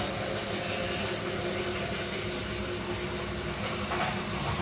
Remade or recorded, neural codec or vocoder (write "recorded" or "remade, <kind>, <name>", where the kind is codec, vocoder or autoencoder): recorded